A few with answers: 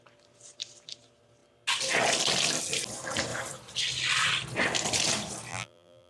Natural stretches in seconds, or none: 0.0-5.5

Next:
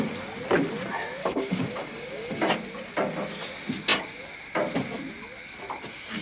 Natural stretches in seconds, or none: 0.0-1.2; 2.5-6.2

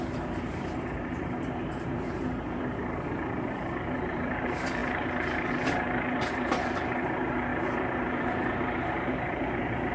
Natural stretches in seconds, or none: none

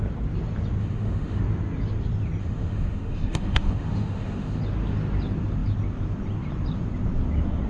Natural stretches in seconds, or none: 0.0-0.8; 1.4-2.4; 4.6-7.7